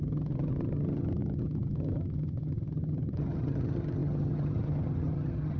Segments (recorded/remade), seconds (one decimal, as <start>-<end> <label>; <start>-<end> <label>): 0.0-5.6 remade